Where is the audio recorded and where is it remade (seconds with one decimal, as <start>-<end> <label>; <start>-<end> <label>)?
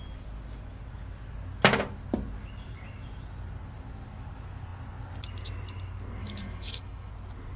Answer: 0.0-6.2 recorded; 6.2-7.1 remade; 7.1-7.6 recorded